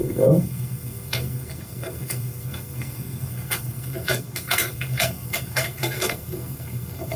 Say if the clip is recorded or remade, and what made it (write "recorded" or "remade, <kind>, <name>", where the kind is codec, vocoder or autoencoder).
remade, codec, SNAC